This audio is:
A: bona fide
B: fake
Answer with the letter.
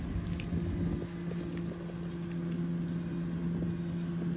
A